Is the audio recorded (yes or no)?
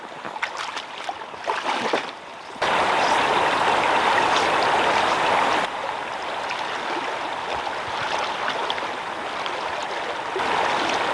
yes